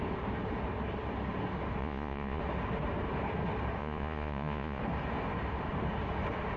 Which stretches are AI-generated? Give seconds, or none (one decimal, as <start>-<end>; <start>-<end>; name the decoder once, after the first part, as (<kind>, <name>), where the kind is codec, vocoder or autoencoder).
1.8-2.4 (vocoder, Vocos); 3.8-4.8